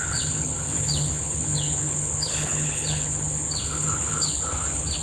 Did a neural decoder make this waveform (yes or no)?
yes